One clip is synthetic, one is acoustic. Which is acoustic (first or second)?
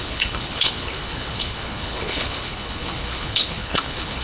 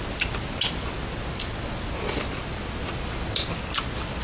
second